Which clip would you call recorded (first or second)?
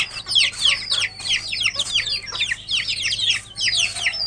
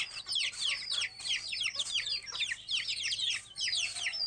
first